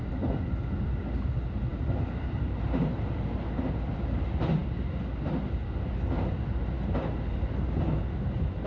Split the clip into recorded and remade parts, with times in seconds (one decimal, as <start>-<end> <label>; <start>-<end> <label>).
0.0-8.7 recorded